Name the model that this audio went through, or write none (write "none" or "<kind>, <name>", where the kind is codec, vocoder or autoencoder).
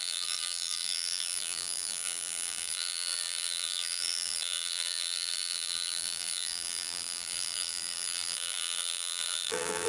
vocoder, BigVGAN v2